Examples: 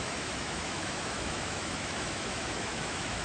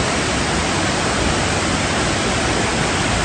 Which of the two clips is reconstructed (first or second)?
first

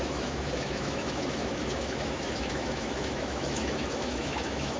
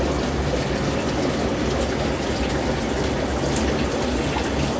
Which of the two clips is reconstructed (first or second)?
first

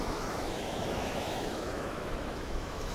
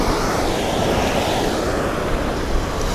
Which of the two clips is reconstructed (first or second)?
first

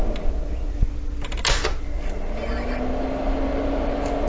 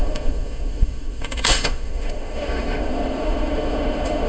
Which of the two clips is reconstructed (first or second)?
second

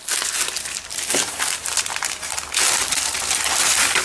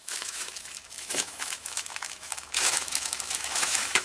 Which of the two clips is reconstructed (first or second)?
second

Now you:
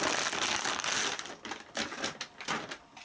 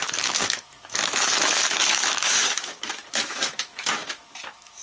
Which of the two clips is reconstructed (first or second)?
second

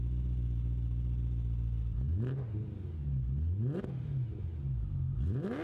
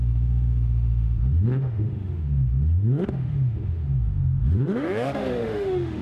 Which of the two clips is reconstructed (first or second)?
second